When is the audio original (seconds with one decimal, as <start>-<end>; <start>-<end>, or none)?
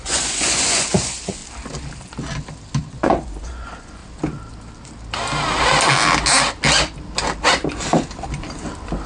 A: 1.4-2.8; 4.0-9.1